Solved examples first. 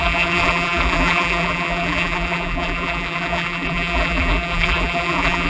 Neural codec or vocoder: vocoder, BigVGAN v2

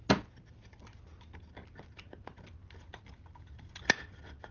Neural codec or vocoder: none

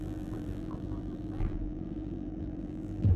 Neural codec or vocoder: vocoder, BigVGAN v2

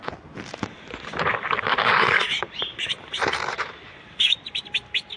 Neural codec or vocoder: vocoder, BigVGAN v2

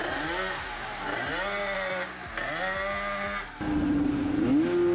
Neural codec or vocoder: none